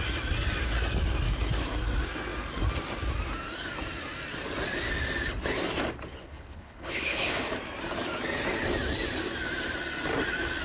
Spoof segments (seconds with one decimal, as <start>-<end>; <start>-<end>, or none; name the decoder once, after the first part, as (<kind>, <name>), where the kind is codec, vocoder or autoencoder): 6.2-7.5 (codec, HILCodec)